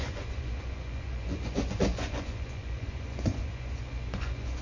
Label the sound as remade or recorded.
remade